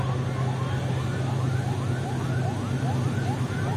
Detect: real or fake real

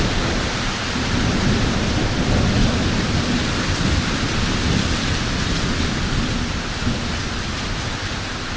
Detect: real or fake real